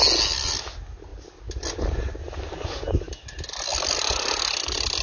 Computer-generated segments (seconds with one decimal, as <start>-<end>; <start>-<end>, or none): none